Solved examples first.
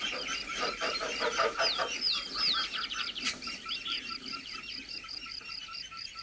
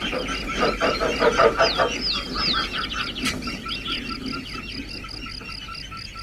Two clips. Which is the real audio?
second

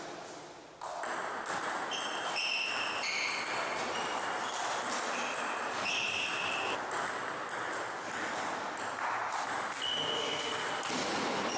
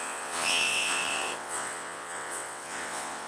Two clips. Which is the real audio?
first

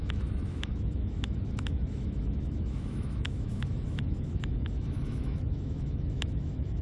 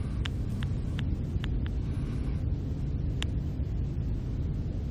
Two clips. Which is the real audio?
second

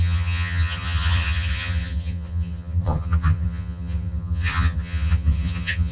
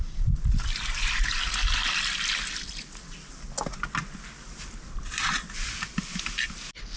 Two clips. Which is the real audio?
second